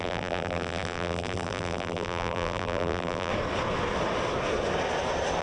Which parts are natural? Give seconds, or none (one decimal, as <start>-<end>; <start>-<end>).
3.3-5.4